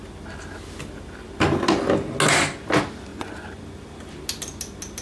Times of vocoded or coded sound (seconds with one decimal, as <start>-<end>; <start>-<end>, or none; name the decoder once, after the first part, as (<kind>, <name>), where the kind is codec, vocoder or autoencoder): 3.1-3.6 (vocoder, Vocos)